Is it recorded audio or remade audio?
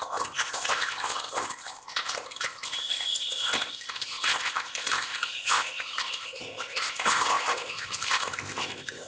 remade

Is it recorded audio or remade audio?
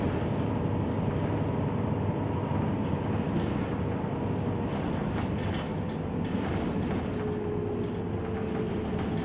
recorded